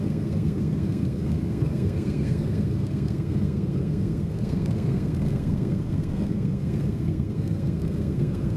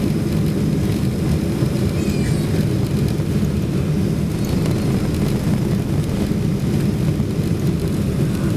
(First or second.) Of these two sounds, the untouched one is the second